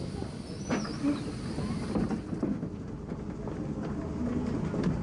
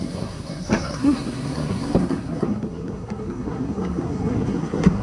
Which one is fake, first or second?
second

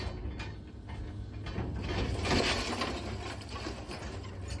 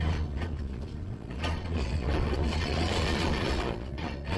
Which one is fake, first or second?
second